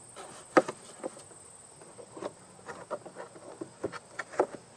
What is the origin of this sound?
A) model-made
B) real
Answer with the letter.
B